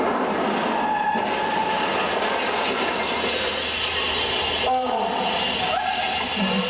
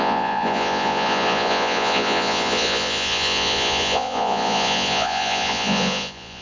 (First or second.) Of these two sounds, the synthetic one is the second